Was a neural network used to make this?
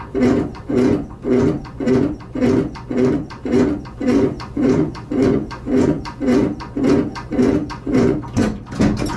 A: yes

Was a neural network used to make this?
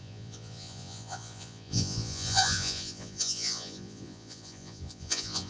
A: yes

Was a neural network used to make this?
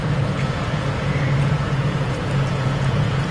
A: yes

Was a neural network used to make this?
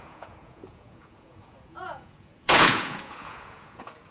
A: yes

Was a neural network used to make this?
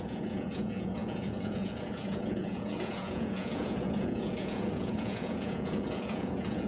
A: yes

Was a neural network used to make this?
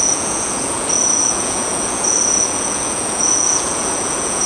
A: yes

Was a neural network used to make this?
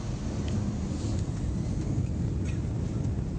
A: no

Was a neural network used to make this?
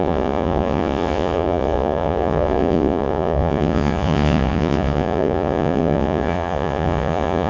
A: yes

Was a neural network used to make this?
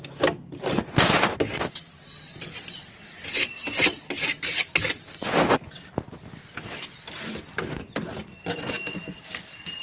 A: no